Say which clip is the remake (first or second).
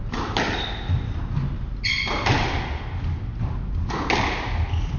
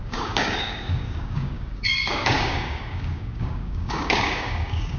second